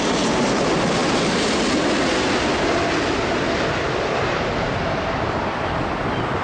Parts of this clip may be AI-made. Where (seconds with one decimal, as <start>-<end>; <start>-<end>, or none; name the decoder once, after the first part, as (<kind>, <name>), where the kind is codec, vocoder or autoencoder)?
none